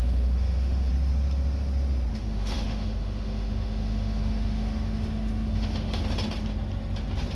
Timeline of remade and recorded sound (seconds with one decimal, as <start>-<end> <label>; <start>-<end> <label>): 0.0-0.9 remade; 0.9-2.1 recorded; 2.1-6.0 remade; 6.0-7.3 recorded